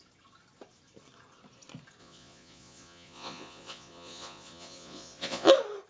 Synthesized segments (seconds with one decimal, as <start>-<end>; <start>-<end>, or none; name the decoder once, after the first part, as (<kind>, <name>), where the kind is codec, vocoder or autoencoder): 2.0-5.5 (vocoder, Vocos)